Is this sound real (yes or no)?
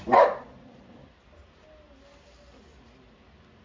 yes